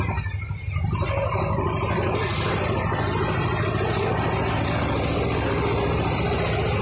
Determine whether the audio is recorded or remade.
recorded